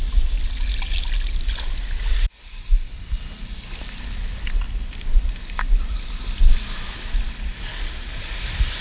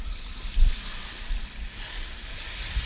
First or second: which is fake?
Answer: second